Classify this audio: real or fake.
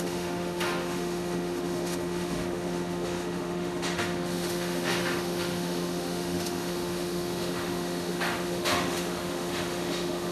fake